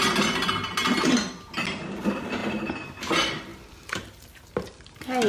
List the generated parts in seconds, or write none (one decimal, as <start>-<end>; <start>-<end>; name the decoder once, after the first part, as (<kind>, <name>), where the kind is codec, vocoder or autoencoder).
3.5-4.5 (vocoder, BigVGAN v2)